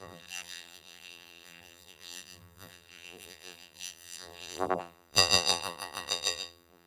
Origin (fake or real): fake